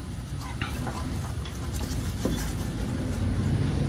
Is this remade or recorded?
recorded